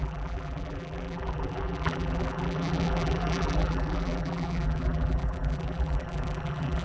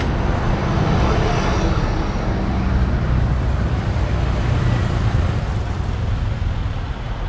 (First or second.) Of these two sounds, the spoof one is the first